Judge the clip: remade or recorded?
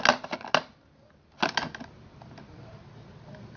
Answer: recorded